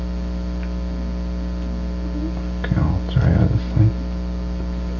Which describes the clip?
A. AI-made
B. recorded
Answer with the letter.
B